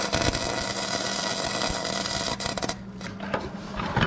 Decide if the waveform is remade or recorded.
recorded